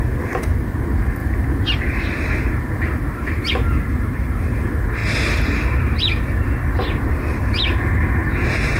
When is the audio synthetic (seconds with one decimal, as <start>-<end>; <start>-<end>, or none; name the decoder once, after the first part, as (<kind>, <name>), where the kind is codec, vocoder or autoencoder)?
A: 1.2-3.5 (vocoder, BigVGAN v2); 3.9-4.5